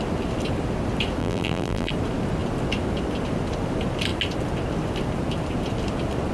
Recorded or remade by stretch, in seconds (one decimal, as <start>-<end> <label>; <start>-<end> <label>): 0.0-1.2 recorded; 1.2-1.9 remade; 1.9-6.3 recorded